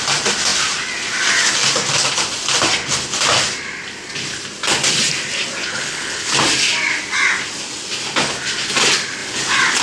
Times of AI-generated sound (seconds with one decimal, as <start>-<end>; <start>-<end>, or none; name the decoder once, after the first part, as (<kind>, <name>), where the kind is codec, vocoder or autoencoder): 5.6-6.3 (codec, HILCodec)